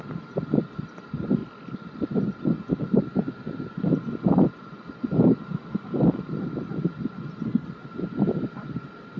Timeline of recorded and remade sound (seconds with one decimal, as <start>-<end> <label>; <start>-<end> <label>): 0.0-9.2 recorded